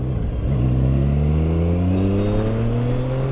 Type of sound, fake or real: real